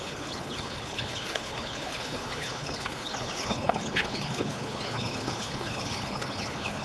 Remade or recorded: remade